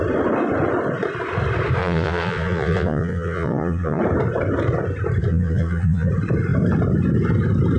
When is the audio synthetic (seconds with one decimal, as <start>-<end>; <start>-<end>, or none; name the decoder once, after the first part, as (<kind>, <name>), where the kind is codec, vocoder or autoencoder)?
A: 1.8-4.0 (vocoder, Vocos); 5.3-6.1